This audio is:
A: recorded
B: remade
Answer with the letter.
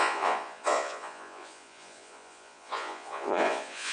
B